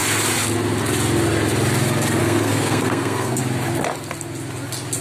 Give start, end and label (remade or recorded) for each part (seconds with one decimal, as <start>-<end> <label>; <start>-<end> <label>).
0.0-2.2 recorded; 2.2-3.4 remade; 3.4-5.0 recorded